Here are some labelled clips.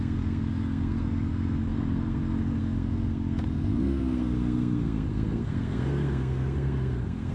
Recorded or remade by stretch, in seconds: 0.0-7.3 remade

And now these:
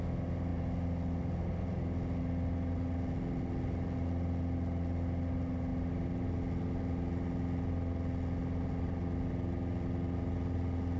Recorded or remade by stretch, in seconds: 0.0-11.0 recorded

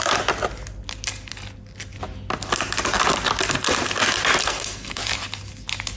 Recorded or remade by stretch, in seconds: 0.0-4.4 recorded; 4.4-5.0 remade; 5.0-6.0 recorded

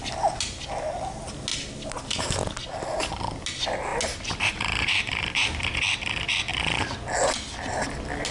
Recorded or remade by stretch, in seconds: 0.0-8.3 recorded

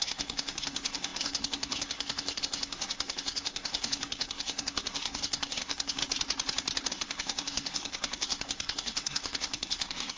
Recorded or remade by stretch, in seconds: 0.0-6.0 remade; 6.0-6.9 recorded; 6.9-10.2 remade

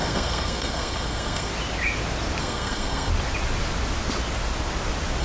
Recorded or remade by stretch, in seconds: 0.0-1.5 remade; 1.5-2.4 recorded; 2.4-3.1 remade; 3.1-5.2 recorded

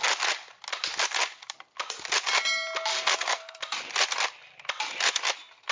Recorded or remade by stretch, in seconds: 0.0-2.9 recorded; 2.9-3.6 remade; 3.6-5.7 recorded

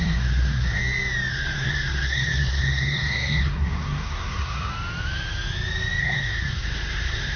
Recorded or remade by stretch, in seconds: 0.0-0.8 remade; 0.8-1.3 recorded; 1.3-4.7 remade; 4.7-6.0 recorded; 6.0-7.4 remade